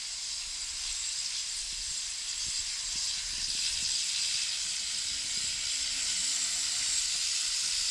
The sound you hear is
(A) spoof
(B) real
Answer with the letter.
B